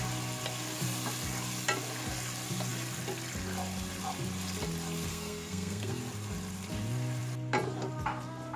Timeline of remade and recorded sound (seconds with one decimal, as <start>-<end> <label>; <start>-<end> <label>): 0.0-5.1 recorded; 5.1-6.0 remade; 6.0-8.6 recorded